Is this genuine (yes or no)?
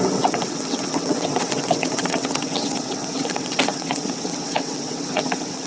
no